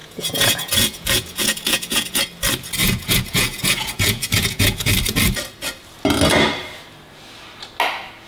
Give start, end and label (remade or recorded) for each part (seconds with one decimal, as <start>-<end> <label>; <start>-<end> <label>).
0.0-2.2 remade; 2.2-2.8 recorded; 2.8-4.9 remade; 4.9-8.3 recorded